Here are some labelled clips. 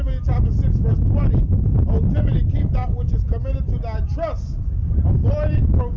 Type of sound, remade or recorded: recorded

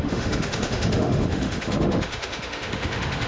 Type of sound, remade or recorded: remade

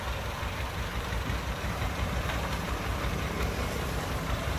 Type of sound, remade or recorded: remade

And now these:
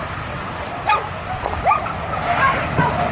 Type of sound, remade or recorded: recorded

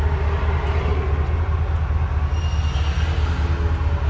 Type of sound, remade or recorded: recorded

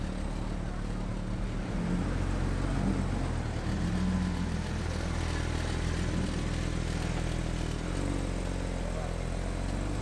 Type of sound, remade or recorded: recorded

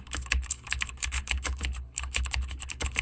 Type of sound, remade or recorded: remade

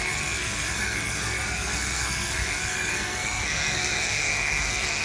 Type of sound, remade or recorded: remade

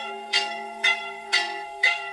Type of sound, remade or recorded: remade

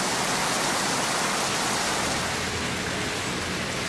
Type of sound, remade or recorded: recorded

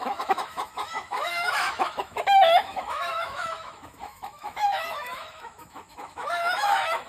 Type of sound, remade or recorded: remade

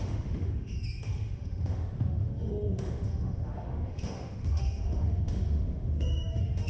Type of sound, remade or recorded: remade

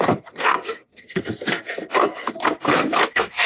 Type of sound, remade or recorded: remade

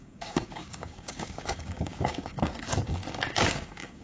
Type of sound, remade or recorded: remade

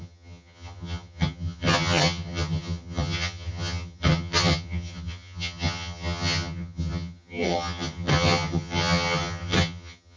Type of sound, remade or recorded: remade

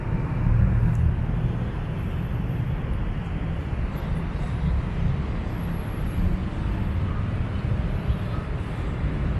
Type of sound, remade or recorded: recorded